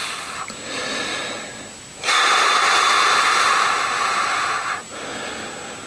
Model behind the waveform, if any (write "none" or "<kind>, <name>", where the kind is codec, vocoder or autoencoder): none